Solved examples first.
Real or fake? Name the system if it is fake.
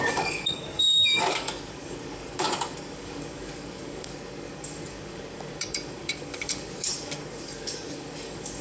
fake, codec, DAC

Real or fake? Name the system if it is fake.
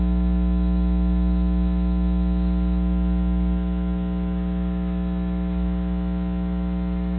fake, autoencoder, DAC-VAE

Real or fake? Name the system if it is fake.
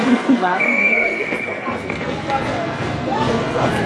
fake, codec, SNAC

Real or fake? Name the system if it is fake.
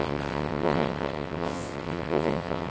fake, vocoder, WaveNeXt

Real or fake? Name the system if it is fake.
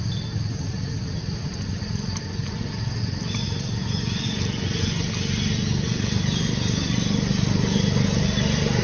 real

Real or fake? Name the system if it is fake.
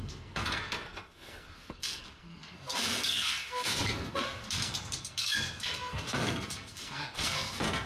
fake, codec, SNAC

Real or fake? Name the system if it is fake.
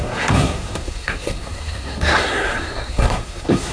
fake, codec, SNAC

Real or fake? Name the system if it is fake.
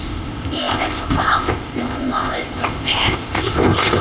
fake, codec, ZipCodec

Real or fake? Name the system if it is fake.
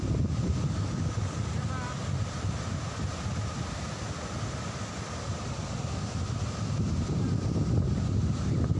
real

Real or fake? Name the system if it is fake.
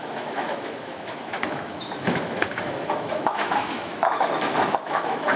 fake, autoencoder, DAC-VAE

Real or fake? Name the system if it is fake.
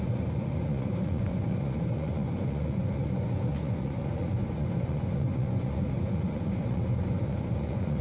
fake, vocoder, Vocos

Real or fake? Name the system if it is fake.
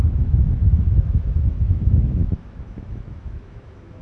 fake, autoencoder, DAC-VAE